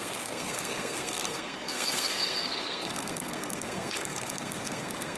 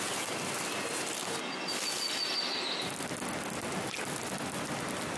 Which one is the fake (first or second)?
first